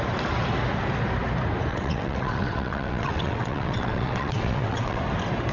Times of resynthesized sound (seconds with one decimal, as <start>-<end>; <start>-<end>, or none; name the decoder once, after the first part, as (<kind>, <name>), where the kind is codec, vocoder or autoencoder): 1.7-5.0 (vocoder, WaveNeXt)